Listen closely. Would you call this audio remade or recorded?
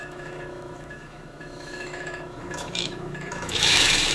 remade